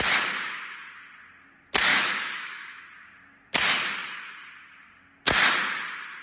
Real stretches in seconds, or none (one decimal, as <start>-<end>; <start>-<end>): 0.0-1.9; 2.8-6.2